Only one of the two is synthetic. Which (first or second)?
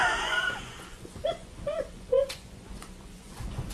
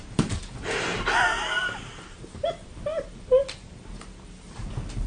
first